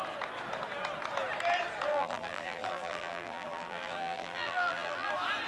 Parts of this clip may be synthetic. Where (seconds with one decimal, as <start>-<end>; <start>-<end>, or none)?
1.9-5.1